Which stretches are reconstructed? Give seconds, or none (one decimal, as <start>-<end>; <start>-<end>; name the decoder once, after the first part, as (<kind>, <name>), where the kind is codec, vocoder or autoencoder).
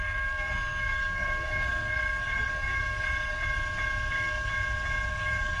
0.0-3.4 (codec, SNAC); 4.1-4.5; 5.1-5.6